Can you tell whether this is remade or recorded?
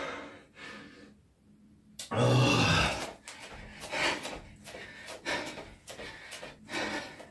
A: recorded